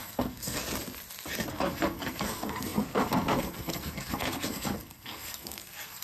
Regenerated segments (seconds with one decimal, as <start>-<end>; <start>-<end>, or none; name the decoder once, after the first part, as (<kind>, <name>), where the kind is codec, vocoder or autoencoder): 0.0-0.6 (codec, SNAC); 1.5-6.0